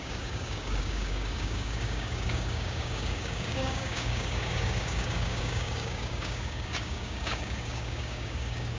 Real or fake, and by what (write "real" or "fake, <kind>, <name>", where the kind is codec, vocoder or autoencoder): fake, codec, DAC